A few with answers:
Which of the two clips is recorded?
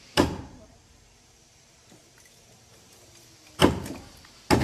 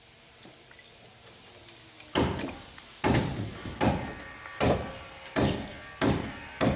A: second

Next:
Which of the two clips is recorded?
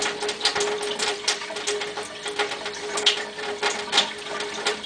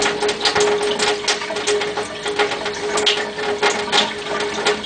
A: second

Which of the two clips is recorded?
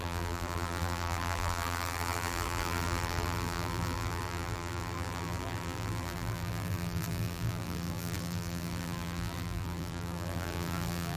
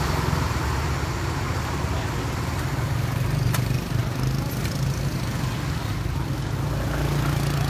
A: second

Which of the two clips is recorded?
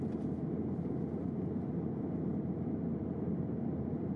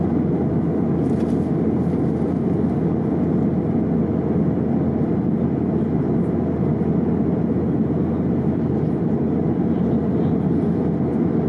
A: second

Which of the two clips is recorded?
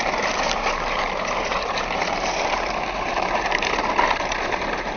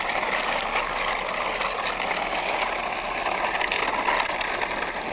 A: second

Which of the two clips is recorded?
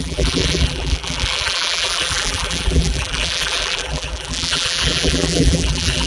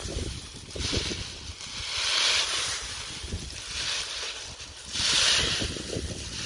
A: second